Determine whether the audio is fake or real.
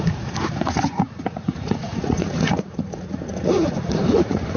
fake